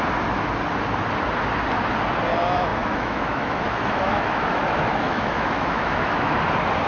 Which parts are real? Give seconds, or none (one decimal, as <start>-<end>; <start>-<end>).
0.0-2.7; 6.4-6.9

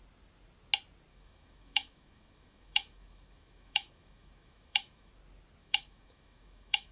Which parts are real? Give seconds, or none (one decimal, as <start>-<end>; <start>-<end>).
0.0-1.1; 5.1-5.6

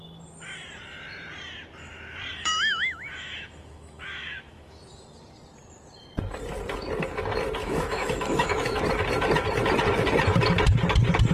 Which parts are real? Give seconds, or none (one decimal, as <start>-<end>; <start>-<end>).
0.0-2.3; 4.8-7.6; 8.8-11.3

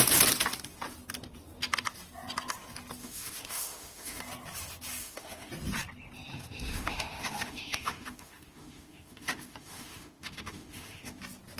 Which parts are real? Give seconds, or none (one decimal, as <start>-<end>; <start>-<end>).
0.0-3.0; 4.2-5.0; 5.5-6.3; 11.2-11.6